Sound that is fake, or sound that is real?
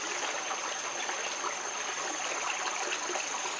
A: real